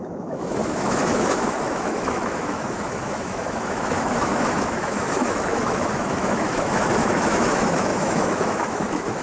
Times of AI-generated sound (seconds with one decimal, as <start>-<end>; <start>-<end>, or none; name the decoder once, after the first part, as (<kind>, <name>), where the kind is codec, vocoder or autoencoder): 0.0-9.2 (autoencoder, DAC-VAE)